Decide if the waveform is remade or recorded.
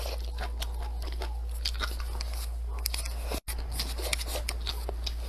recorded